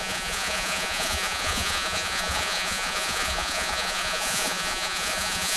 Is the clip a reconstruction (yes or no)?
yes